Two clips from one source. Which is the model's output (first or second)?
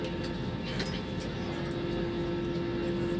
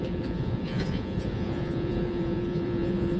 second